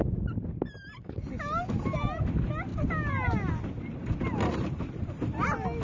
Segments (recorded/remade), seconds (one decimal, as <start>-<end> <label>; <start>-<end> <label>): 0.0-5.8 recorded

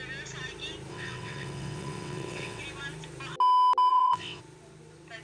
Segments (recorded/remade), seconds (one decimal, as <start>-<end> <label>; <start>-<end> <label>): 0.0-0.9 recorded; 0.9-2.6 remade; 2.6-3.9 recorded; 3.9-4.4 remade; 4.4-5.2 recorded